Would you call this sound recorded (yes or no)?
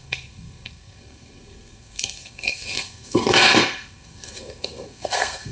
no